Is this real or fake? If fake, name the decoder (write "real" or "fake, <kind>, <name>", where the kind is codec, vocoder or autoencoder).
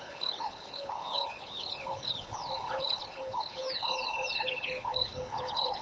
fake, codec, HILCodec